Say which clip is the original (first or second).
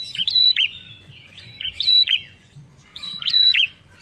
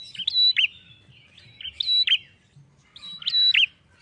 second